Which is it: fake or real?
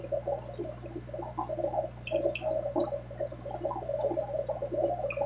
real